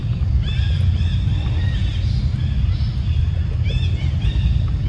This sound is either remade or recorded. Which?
recorded